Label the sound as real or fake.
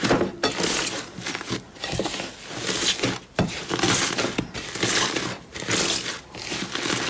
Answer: real